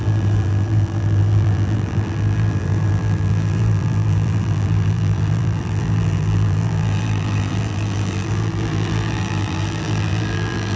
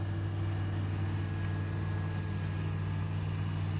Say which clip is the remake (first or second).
first